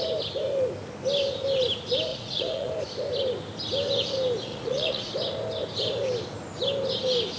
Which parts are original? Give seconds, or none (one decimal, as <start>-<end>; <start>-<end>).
0.0-2.1; 2.7-4.5; 5.1-7.4